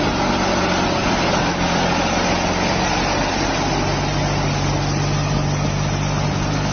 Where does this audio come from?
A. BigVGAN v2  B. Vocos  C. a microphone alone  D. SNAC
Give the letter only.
C